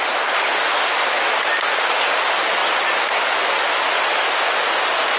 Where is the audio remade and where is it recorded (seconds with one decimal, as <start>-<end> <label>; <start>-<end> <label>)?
0.0-5.2 recorded